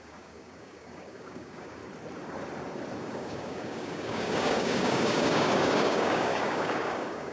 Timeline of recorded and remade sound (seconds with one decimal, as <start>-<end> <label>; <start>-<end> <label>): 0.0-1.8 remade; 1.8-3.0 recorded; 3.0-7.3 remade